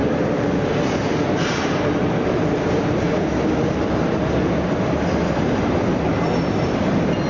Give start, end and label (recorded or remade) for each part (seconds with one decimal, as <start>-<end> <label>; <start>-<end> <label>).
0.0-1.1 recorded; 1.1-2.4 remade; 2.4-7.3 recorded